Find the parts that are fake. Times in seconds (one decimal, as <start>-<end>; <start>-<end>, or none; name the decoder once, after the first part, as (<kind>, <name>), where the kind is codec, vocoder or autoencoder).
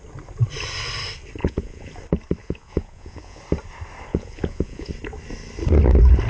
1.4-1.9 (vocoder, Vocos); 2.4-3.4; 4.1-4.9